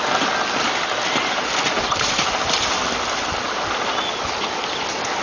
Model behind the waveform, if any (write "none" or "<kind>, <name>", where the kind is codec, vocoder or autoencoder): none